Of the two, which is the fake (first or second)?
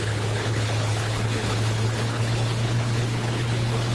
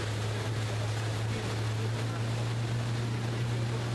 first